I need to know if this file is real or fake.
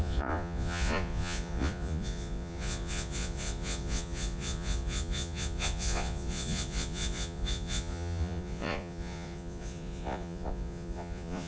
fake